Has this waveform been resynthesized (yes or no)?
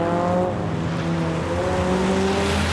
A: no